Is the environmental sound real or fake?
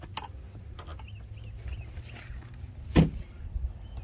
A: real